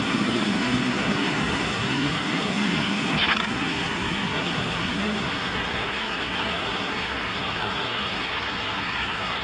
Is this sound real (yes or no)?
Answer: no